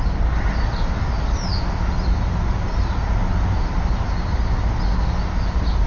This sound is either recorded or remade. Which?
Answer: recorded